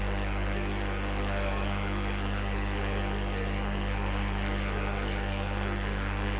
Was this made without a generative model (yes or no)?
no